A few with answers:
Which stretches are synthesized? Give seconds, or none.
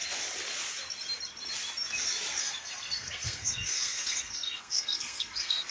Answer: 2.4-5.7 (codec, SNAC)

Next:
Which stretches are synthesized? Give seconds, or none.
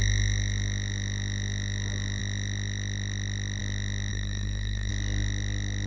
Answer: 4.1-4.9 (codec, SNAC)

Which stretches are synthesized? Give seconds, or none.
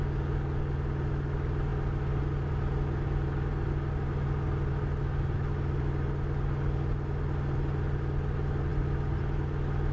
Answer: none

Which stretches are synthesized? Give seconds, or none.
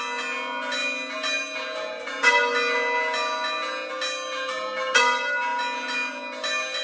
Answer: none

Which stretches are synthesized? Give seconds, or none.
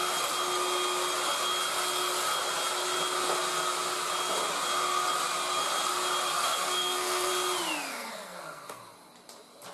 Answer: 6.3-7.3 (codec, SNAC); 7.9-8.8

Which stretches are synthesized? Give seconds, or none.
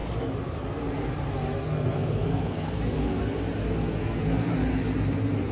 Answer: 1.6-3.2 (codec, SNAC); 4.0-4.5